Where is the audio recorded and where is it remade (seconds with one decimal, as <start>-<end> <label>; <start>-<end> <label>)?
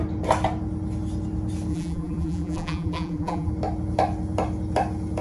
0.0-1.7 recorded; 1.7-3.5 remade; 3.5-5.2 recorded